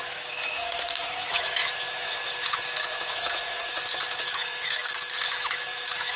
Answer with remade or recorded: remade